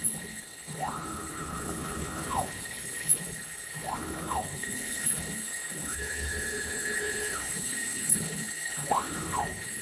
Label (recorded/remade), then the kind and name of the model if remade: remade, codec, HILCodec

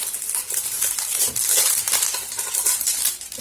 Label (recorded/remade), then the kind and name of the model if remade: recorded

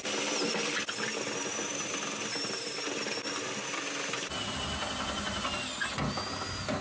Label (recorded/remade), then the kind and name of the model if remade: recorded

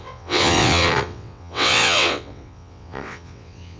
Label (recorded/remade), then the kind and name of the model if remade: remade, vocoder, WaveNeXt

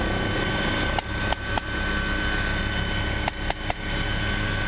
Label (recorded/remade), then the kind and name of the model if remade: recorded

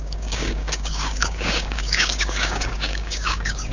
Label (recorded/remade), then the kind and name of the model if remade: remade, codec, DAC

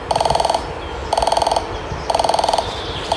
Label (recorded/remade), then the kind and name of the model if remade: recorded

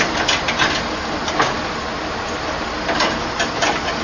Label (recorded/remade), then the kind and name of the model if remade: recorded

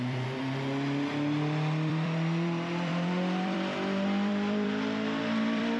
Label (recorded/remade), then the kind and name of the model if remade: remade, vocoder, BigVGAN v2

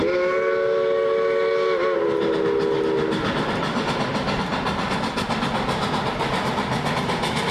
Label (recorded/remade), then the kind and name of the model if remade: recorded